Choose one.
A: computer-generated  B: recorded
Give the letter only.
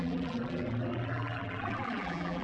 A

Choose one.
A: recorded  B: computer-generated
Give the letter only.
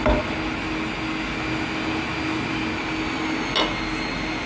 A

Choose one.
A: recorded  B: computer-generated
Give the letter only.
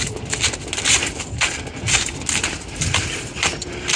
A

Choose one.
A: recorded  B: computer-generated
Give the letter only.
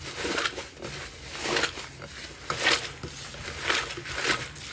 A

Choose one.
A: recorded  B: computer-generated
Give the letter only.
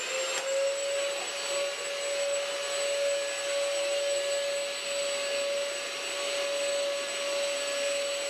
A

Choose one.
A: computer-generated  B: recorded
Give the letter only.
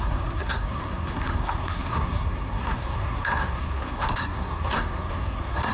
A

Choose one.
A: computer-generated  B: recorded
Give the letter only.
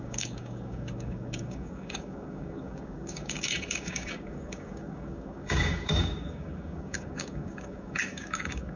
A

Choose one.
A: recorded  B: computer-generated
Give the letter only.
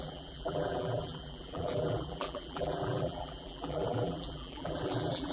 B